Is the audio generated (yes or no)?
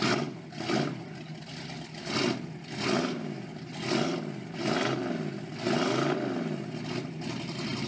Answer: no